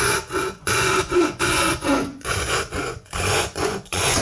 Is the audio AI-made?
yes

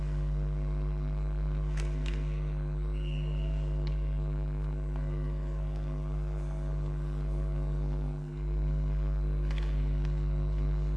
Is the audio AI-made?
yes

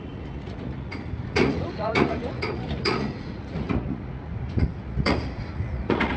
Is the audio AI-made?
yes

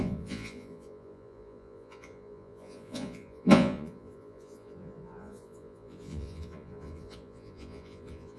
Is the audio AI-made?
yes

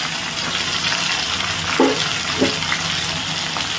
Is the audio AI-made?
no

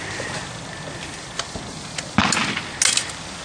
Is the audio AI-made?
no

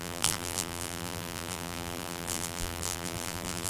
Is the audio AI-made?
yes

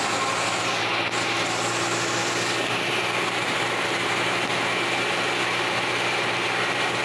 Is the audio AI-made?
no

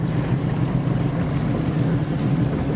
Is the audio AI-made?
no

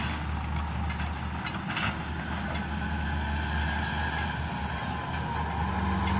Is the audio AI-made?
no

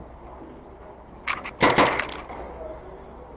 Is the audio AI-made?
no